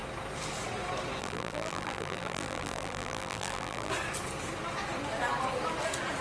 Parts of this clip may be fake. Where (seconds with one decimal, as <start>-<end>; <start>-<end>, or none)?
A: 1.2-3.9